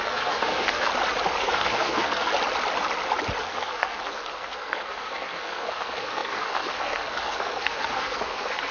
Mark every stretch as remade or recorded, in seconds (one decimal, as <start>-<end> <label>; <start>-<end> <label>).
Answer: 0.0-0.9 remade; 0.9-1.4 recorded; 1.4-2.3 remade; 2.3-3.4 recorded; 3.4-8.7 remade